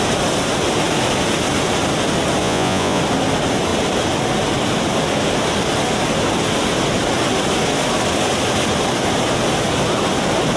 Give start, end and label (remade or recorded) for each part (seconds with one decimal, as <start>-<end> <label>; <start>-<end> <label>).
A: 0.0-2.4 recorded; 2.4-3.0 remade; 3.0-10.6 recorded